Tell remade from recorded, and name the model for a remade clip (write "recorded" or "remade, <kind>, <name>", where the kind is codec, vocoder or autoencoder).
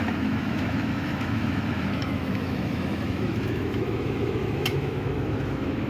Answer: remade, autoencoder, DAC-VAE